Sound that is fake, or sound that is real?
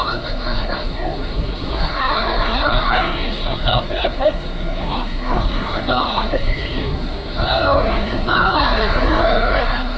fake